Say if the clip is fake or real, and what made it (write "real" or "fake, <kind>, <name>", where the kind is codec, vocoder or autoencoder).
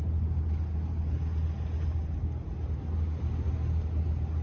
real